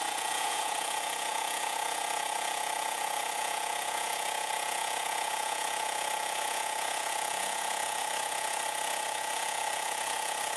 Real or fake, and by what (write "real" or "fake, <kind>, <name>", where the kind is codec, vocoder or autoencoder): fake, vocoder, Vocos